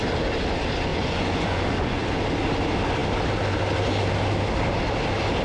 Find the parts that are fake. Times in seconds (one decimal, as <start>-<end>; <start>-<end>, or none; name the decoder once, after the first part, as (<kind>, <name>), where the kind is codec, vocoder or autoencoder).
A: 0.9-2.0 (vocoder, Vocos)